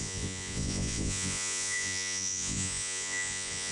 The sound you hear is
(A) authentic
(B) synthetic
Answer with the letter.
B